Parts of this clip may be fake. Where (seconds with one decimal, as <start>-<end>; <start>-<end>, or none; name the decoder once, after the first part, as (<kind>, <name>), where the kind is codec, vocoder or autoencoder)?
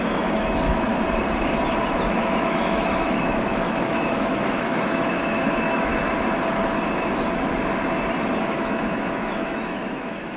0.0-0.9 (autoencoder, DAC-VAE); 2.2-5.9; 8.4-10.4